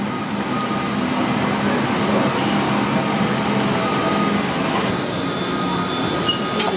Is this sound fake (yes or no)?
no